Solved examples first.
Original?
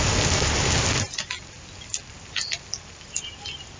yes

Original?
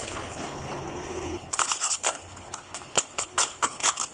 no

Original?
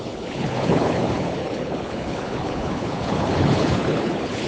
no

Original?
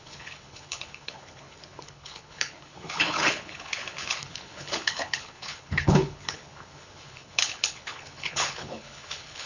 no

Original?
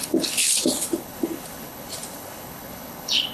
no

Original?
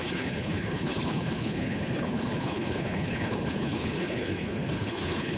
no